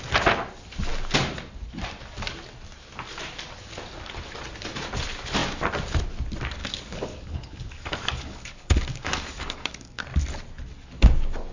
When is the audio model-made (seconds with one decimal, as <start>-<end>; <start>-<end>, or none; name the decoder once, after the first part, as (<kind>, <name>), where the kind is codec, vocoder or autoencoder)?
6.6-10.0 (codec, DAC)